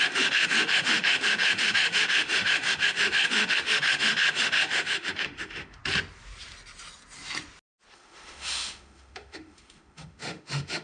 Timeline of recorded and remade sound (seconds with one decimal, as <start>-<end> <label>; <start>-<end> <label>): 0.0-5.8 remade; 5.8-7.9 recorded; 7.9-10.8 remade